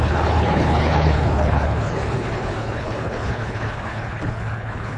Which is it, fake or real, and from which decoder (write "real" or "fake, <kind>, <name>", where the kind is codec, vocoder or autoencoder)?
fake, codec, HILCodec